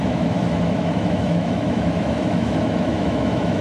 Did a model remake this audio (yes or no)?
yes